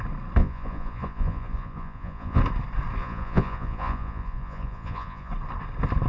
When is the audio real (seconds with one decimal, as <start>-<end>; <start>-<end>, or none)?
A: 0.0-0.4; 2.4-3.0; 5.3-6.1